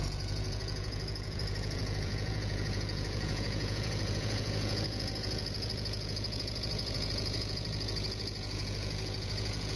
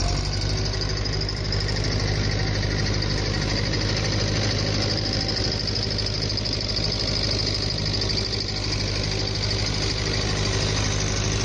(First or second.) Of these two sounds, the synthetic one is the first